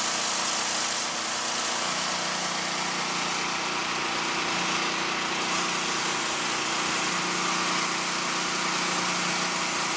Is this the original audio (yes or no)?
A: yes